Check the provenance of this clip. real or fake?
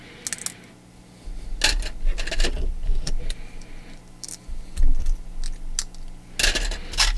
real